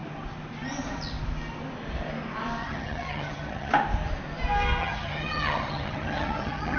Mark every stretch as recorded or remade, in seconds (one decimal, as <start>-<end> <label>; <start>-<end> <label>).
0.0-2.6 recorded; 2.6-3.7 remade; 3.7-4.8 recorded; 4.8-6.8 remade